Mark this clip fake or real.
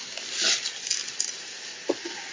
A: real